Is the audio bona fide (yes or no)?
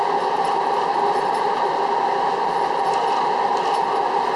yes